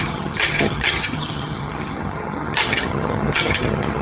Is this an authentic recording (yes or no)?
no